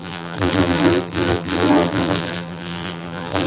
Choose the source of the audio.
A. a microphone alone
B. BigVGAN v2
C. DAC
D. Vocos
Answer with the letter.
B